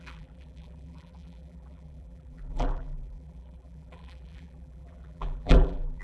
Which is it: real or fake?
fake